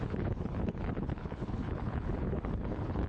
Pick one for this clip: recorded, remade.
remade